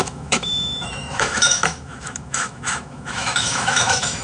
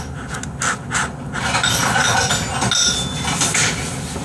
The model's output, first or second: first